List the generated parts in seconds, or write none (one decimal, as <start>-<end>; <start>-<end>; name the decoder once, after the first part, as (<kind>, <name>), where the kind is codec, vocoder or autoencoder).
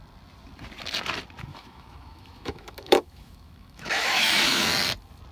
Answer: 1.5-4.7 (autoencoder, DAC-VAE)